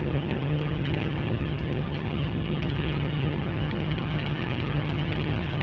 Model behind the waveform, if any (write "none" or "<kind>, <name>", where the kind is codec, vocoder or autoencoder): vocoder, HiFi-GAN